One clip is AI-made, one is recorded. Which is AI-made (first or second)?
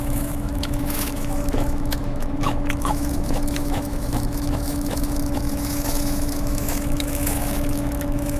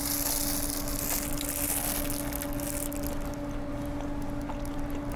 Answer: first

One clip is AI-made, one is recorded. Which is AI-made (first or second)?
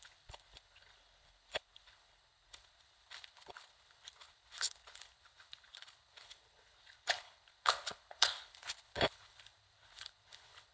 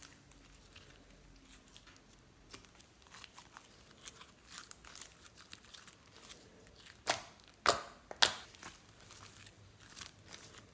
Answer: first